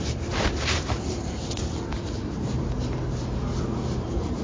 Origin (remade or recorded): recorded